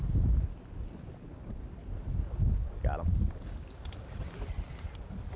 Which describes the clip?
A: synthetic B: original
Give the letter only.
B